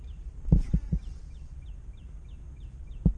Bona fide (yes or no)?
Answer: yes